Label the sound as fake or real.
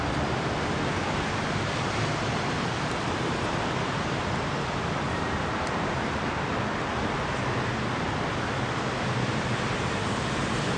fake